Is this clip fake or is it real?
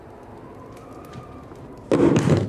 real